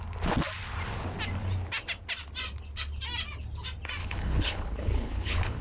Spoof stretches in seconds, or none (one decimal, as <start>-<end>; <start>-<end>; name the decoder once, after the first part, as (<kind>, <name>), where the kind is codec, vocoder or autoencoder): 4.0-5.6 (codec, HILCodec)

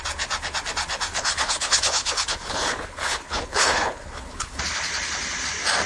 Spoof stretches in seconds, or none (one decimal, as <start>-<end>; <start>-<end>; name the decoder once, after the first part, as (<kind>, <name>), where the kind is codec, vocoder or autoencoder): 1.1-4.6 (codec, HILCodec)

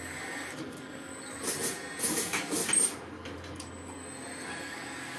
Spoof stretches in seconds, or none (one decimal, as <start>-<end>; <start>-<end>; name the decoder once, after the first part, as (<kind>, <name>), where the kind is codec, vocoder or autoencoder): 0.0-1.1 (codec, DAC); 2.0-2.6; 4.6-5.2

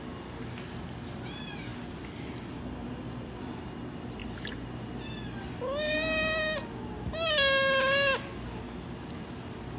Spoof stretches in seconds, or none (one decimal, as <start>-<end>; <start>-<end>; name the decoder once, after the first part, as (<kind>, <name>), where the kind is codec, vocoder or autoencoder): none

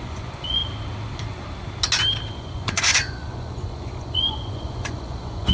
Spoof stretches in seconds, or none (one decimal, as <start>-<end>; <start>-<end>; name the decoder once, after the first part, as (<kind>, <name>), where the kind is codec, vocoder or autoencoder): 0.0-0.6 (vocoder, Vocos); 2.3-5.5